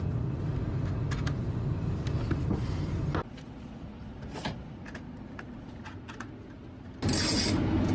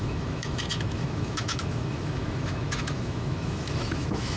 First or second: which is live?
first